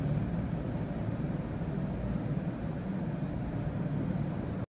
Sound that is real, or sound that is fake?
real